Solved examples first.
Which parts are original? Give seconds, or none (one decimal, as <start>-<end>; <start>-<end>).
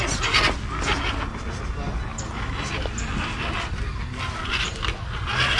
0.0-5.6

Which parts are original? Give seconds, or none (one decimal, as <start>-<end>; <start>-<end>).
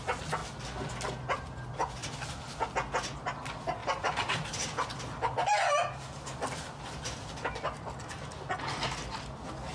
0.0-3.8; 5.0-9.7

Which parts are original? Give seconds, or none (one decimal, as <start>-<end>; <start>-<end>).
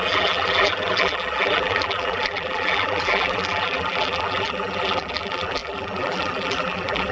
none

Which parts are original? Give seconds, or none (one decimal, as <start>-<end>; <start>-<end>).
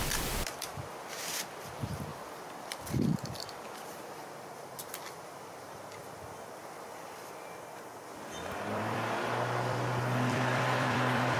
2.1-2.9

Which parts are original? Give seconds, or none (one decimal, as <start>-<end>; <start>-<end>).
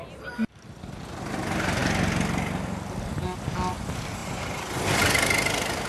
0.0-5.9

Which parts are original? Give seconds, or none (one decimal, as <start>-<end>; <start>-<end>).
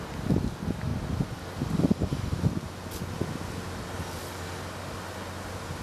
0.0-5.8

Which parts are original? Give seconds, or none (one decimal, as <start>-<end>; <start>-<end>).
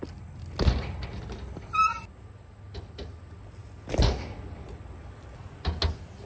0.0-6.2